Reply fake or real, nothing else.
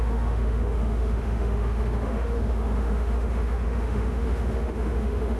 fake